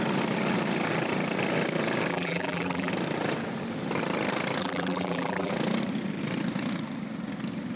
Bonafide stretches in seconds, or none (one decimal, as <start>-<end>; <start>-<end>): 0.0-2.1; 2.9-4.6; 5.5-7.8